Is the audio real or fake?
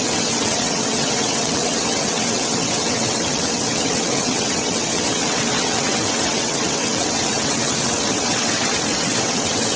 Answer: fake